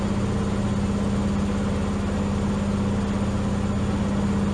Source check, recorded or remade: recorded